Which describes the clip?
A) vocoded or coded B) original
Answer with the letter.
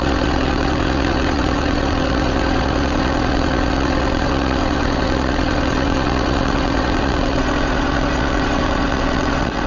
A